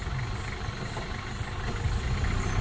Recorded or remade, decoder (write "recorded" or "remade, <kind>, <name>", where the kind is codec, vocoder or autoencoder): recorded